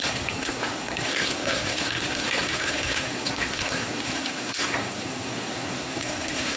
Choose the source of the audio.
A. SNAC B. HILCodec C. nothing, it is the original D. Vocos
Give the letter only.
A